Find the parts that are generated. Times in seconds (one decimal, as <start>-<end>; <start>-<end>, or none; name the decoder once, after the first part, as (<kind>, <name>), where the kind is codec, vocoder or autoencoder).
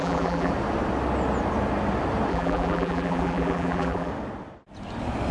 0.0-0.5 (vocoder, BigVGAN v2); 2.3-4.1